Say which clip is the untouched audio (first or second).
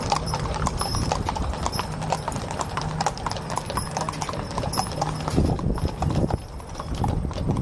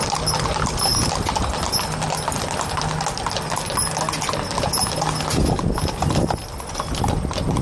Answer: second